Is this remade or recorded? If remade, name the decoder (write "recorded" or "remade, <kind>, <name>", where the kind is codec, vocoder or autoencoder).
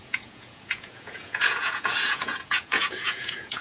remade, vocoder, Vocos